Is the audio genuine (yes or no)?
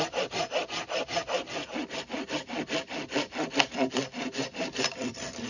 yes